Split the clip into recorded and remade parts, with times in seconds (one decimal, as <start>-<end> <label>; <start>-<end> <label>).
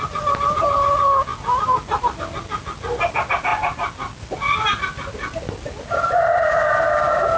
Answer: 0.0-7.4 recorded